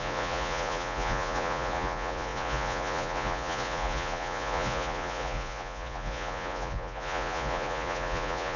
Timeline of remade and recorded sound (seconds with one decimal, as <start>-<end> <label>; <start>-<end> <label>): 0.0-8.6 remade